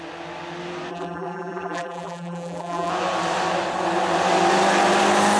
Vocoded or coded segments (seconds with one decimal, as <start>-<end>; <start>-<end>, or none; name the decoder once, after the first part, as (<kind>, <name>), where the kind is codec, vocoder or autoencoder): 0.9-2.9 (vocoder, BigVGAN v2)